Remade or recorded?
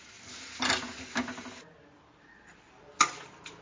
recorded